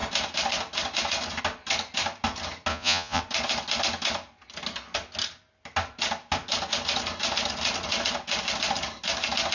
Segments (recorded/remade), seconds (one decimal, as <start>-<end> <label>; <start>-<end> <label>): 0.0-2.7 recorded; 2.7-3.2 remade; 3.2-9.5 recorded